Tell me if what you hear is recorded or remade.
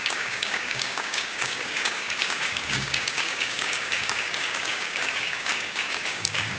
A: remade